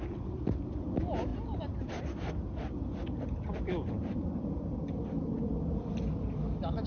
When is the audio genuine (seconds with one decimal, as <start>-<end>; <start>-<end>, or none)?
0.0-1.3; 2.3-6.9